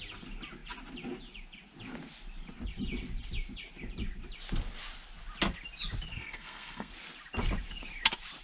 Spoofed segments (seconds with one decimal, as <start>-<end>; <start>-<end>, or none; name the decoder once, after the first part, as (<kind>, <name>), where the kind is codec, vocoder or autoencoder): 6.1-6.9 (codec, SNAC)